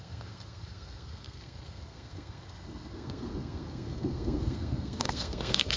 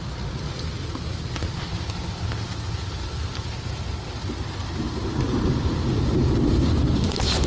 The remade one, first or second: first